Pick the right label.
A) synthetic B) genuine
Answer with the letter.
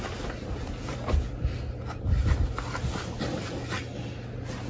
B